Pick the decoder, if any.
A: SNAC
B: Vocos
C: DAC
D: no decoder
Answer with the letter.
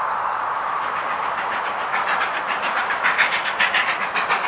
D